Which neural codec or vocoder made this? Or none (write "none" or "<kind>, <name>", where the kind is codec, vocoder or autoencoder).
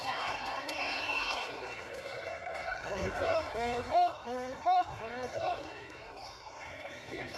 codec, SNAC